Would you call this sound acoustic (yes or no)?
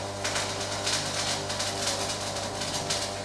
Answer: yes